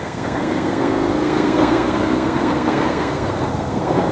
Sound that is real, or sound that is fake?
fake